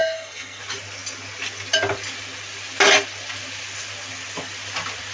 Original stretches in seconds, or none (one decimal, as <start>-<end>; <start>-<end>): 0.6-5.1